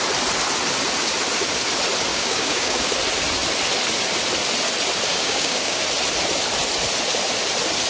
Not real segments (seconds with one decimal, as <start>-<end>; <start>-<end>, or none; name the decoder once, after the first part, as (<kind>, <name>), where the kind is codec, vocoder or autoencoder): 2.1-2.9 (codec, DAC); 5.1-5.8